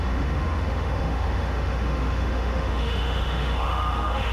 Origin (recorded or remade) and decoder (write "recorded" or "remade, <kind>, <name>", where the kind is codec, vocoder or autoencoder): remade, autoencoder, DAC-VAE